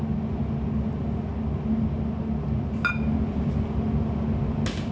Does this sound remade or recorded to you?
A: recorded